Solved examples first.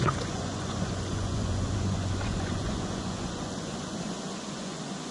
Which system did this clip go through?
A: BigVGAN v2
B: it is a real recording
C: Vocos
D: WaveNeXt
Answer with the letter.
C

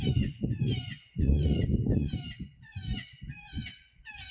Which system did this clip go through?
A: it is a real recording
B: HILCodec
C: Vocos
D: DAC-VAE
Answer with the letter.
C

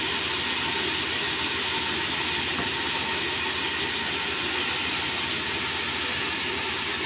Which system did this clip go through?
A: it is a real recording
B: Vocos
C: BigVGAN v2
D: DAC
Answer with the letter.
A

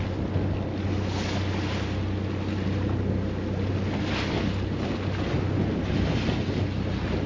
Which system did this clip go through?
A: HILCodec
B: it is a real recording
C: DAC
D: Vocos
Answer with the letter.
B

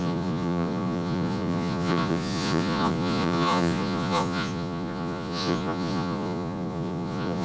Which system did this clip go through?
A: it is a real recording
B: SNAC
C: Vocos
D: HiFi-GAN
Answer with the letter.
C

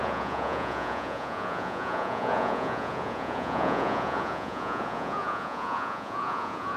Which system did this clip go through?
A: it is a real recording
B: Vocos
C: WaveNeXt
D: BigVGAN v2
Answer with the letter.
B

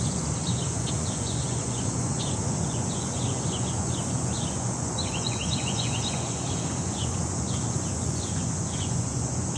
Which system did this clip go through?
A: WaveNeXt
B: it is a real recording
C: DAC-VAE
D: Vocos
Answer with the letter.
D